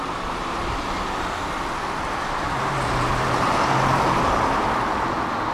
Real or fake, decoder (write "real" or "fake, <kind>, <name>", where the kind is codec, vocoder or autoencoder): real